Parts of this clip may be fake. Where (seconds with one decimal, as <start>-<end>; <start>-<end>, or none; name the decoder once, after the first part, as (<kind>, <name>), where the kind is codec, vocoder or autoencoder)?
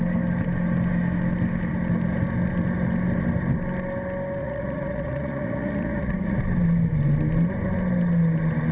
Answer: 4.4-6.4 (vocoder, Vocos)